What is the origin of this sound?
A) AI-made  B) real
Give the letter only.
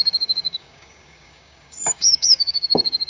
A